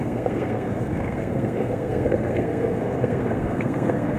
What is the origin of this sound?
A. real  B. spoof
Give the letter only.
B